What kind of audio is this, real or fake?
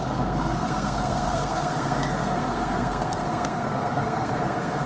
fake